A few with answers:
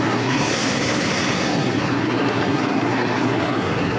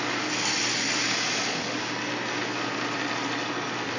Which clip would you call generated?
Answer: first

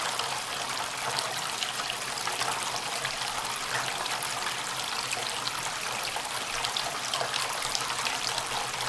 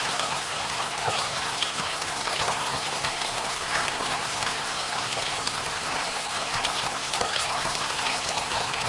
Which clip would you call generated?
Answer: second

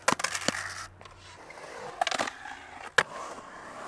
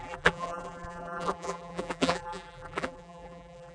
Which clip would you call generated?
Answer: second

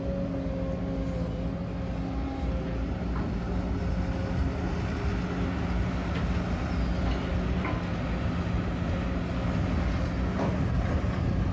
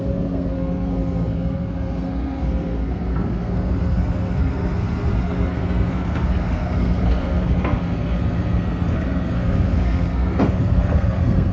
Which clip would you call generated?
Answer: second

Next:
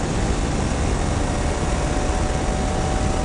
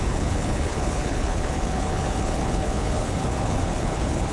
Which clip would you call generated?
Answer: second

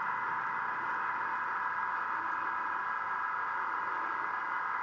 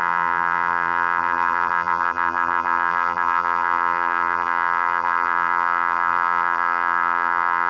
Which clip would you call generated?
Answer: second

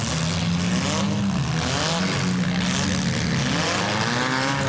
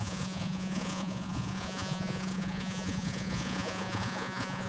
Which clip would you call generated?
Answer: second